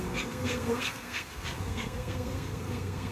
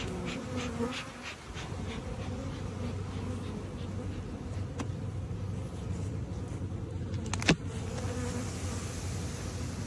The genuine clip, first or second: second